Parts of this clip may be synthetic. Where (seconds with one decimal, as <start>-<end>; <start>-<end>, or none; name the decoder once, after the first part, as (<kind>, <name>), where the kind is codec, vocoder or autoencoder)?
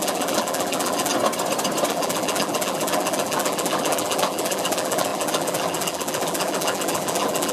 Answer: 0.0-1.1 (vocoder, BigVGAN v2); 1.9-7.5